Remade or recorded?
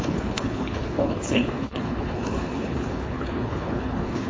remade